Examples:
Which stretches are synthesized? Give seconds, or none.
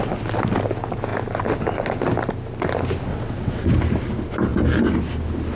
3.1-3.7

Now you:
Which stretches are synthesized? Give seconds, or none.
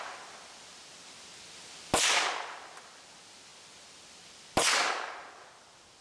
none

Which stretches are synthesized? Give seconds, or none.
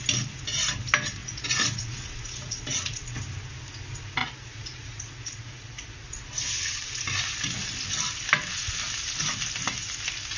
1.2-3.2; 4.2-6.1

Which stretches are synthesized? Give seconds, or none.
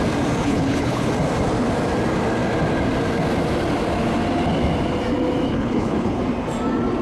0.4-1.1; 5.5-6.2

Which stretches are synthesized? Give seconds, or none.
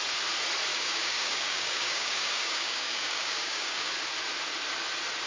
0.7-3.9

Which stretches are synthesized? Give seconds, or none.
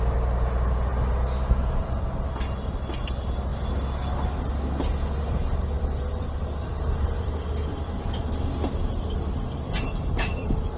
none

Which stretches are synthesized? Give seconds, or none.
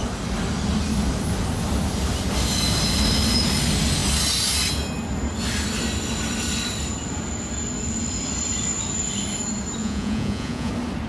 9.8-10.7